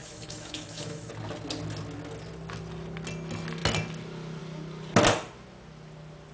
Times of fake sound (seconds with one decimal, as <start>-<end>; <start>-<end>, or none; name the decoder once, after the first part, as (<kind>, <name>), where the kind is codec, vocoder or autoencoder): 0.0-1.1 (autoencoder, DAC-VAE)